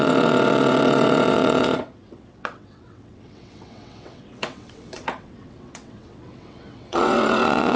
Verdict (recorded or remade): remade